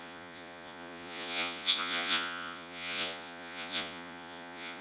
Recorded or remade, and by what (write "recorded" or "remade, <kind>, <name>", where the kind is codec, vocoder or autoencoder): remade, vocoder, Vocos